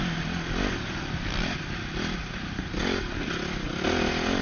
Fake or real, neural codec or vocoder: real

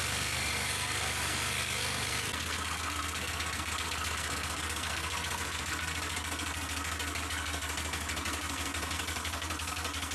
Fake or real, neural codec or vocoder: fake, codec, SNAC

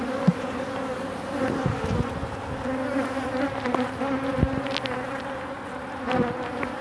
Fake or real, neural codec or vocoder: real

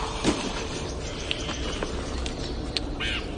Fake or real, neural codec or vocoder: real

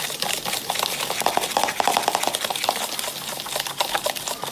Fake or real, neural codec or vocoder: real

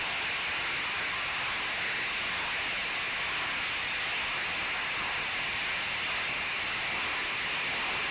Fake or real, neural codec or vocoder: real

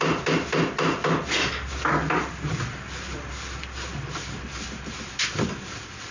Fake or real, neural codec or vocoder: real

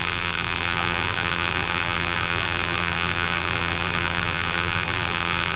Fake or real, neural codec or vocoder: fake, vocoder, BigVGAN v2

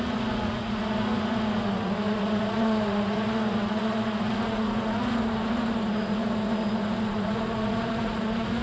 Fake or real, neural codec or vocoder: fake, vocoder, Vocos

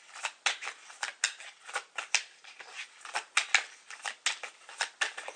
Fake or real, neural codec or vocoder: real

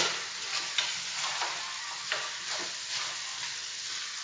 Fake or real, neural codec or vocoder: real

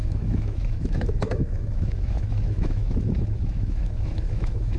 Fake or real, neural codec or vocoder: fake, autoencoder, DAC-VAE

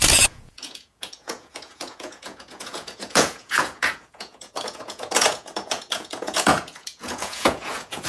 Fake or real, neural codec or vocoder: fake, vocoder, Vocos